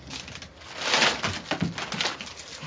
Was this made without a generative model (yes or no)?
yes